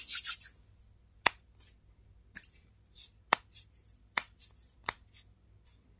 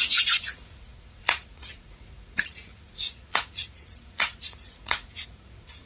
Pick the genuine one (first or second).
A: first